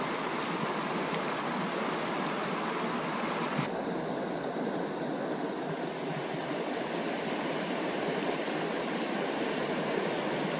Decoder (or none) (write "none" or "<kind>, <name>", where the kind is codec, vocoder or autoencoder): none